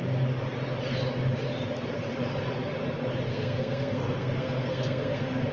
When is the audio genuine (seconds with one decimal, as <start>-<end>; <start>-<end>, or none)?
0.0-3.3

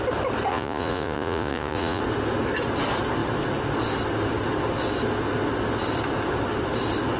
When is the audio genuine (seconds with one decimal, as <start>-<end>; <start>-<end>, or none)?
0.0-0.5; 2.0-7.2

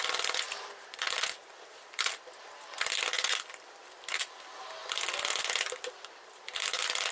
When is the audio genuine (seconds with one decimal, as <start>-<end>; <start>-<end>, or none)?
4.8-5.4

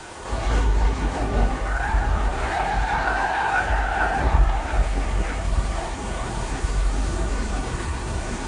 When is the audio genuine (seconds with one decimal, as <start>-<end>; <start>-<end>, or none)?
none